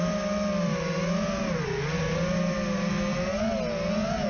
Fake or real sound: real